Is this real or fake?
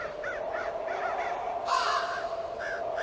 real